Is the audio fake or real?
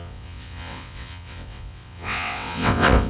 fake